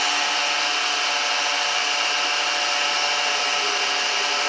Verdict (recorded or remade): recorded